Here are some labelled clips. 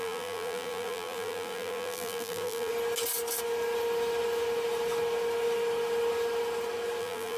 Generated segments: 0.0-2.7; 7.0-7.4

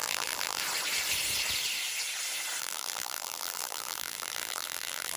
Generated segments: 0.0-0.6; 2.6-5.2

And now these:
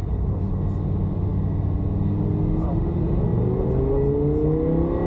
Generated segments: 0.0-0.5

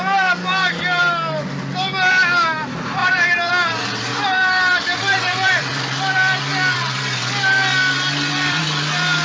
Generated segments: 3.0-3.5; 4.1-8.6

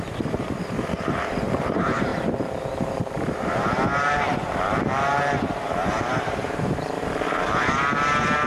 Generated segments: 0.0-2.1; 2.7-8.5

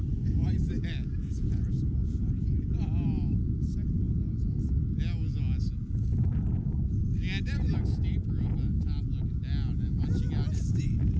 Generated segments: none